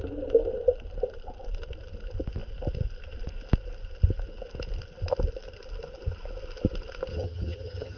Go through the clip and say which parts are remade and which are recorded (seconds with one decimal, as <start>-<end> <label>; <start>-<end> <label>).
0.0-7.1 recorded; 7.1-8.0 remade